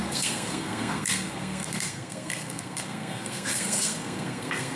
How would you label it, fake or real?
fake